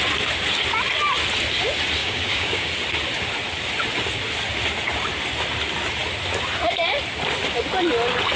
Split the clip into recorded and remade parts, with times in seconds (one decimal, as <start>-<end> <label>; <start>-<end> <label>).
0.0-2.0 recorded; 2.0-2.7 remade; 2.7-8.4 recorded